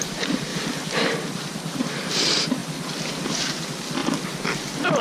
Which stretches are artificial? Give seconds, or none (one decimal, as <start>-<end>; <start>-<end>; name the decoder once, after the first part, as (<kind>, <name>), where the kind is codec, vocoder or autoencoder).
0.0-0.5 (vocoder, BigVGAN v2); 1.0-2.6; 3.4-4.0